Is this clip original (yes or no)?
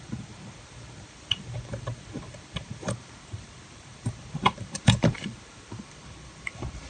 no